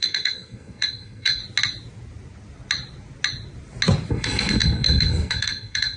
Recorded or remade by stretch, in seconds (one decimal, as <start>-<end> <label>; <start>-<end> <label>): 0.0-1.4 remade; 1.4-4.1 recorded; 4.1-6.0 remade